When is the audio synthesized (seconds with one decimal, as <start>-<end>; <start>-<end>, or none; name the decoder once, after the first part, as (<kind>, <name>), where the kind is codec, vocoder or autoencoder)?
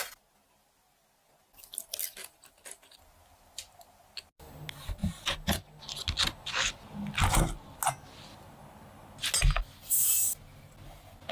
none